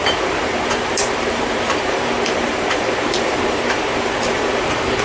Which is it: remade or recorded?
remade